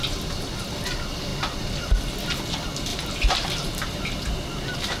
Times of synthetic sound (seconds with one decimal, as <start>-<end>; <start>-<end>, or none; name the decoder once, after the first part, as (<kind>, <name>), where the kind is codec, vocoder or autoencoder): none